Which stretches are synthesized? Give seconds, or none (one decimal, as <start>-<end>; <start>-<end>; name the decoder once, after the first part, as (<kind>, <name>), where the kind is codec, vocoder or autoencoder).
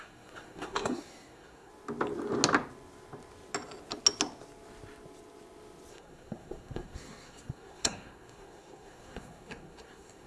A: 0.0-1.7 (codec, SNAC); 5.9-10.3